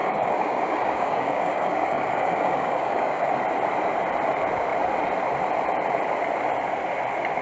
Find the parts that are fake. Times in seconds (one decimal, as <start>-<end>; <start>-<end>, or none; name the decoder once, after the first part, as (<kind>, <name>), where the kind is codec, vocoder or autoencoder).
0.0-3.3 (codec, DAC)